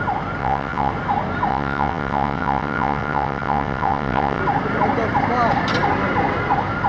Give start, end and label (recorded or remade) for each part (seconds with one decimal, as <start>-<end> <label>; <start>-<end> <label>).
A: 0.0-0.4 recorded; 0.4-0.9 remade; 0.9-1.5 recorded; 1.5-4.4 remade; 4.4-6.9 recorded